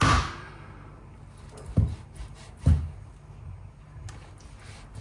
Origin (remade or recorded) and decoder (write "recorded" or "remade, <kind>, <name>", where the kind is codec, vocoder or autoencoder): recorded